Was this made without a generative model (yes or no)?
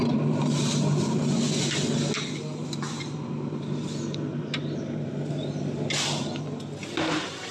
yes